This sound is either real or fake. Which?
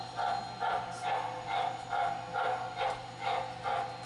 real